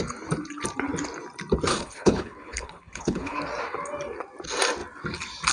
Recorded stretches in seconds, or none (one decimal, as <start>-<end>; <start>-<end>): 0.0-1.7; 3.4-5.5